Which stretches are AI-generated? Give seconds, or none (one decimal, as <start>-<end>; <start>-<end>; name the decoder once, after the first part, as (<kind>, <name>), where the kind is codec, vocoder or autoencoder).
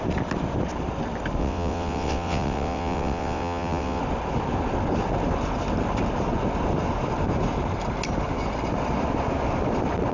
1.4-4.0 (vocoder, WaveNeXt)